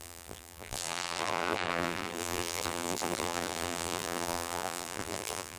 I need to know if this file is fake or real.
fake